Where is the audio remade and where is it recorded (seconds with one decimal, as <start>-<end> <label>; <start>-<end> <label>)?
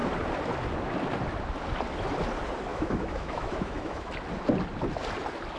0.0-2.7 recorded; 2.7-4.1 remade; 4.1-5.6 recorded